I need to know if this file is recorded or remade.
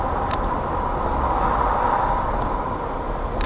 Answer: recorded